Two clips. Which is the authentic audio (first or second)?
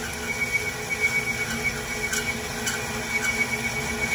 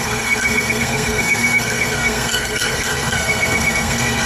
first